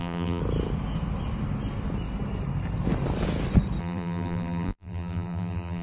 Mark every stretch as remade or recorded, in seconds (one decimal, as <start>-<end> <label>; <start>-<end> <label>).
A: 0.0-0.4 remade; 0.4-3.8 recorded; 3.8-5.8 remade